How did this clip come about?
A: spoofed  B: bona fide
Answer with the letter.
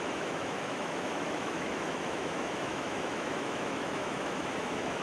A